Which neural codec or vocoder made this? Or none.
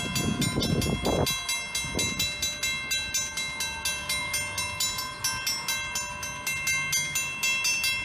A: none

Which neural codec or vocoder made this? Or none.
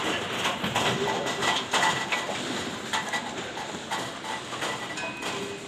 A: none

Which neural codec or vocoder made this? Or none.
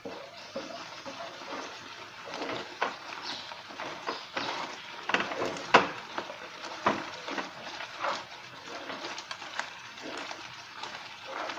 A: vocoder, BigVGAN v2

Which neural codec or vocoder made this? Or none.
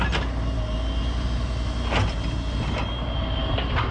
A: none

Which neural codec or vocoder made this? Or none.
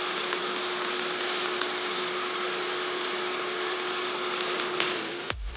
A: none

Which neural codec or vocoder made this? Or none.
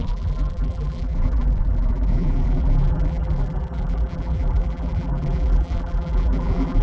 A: vocoder, BigVGAN v2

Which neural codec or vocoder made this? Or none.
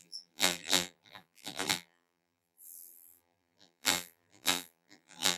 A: vocoder, BigVGAN v2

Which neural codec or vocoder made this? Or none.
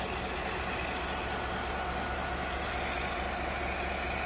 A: none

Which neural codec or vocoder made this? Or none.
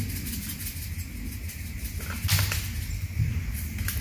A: none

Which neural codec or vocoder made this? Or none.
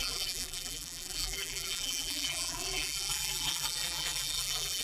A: vocoder, BigVGAN v2